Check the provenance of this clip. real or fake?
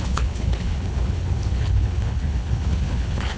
fake